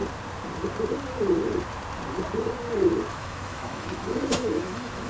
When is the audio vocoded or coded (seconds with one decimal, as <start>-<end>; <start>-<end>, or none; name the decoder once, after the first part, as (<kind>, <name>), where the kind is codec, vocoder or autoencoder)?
3.1-5.1 (autoencoder, DAC-VAE)